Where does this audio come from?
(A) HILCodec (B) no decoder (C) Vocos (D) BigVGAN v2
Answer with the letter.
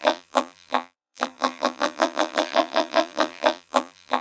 D